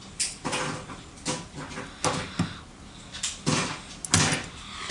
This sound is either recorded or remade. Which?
recorded